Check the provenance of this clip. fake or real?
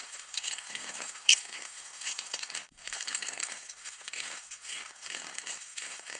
fake